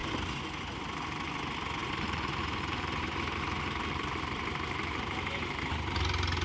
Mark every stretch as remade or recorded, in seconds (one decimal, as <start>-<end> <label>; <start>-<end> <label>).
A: 0.0-1.8 recorded; 1.8-5.6 remade; 5.6-6.4 recorded